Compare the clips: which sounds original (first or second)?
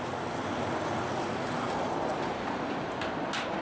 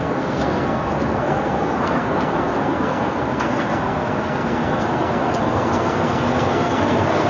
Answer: first